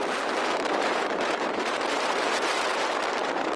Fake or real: fake